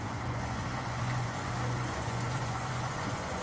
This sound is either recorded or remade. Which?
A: remade